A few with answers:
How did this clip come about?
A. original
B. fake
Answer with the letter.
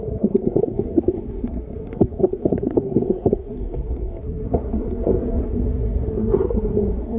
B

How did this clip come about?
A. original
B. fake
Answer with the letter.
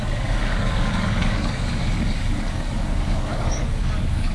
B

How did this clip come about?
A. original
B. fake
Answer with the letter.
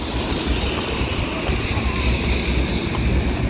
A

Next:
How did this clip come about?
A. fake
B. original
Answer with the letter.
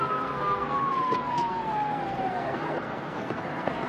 A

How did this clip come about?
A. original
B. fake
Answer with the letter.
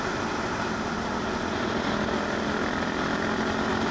A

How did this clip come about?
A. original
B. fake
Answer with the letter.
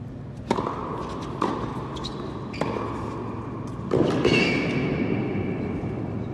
A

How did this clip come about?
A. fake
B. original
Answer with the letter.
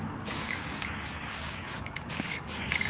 A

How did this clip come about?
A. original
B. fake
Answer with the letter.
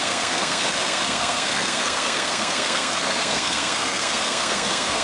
B